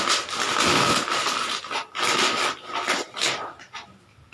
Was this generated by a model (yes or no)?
no